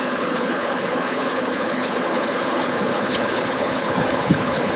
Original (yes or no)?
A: no